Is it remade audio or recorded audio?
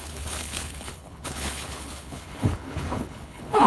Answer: remade